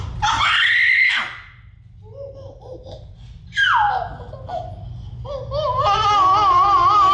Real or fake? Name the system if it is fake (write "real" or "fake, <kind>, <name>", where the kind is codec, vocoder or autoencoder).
real